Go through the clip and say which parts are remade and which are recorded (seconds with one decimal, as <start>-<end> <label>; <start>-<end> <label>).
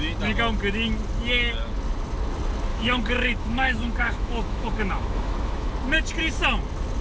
0.0-2.7 recorded; 2.7-5.7 remade; 5.7-7.0 recorded